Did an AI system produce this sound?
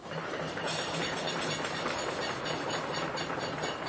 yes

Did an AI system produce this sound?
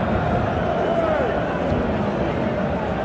no